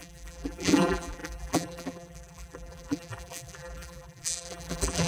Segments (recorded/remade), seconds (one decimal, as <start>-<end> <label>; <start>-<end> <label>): 0.0-5.1 remade